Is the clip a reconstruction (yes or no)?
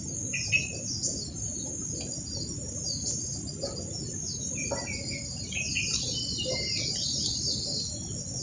no